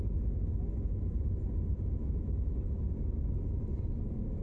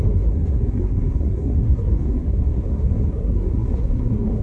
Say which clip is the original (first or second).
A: first